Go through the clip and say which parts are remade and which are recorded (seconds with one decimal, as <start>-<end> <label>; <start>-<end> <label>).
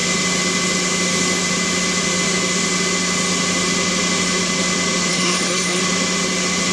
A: 0.0-5.1 recorded; 5.1-5.8 remade; 5.8-6.7 recorded